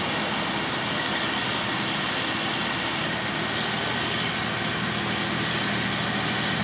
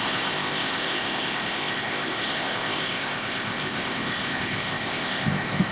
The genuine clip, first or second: first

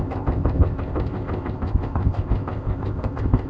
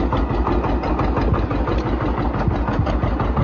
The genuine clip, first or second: second